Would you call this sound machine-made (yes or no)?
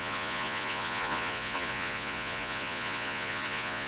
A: yes